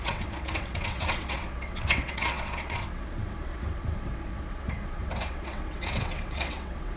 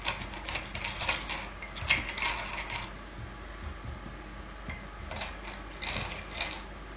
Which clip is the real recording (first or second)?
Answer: second